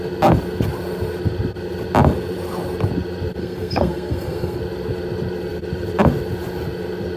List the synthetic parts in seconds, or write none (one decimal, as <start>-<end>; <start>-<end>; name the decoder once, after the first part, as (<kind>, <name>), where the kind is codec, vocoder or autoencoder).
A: 3.4-4.6 (codec, SNAC)